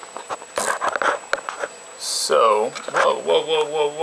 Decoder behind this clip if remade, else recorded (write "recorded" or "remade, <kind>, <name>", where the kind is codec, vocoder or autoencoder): recorded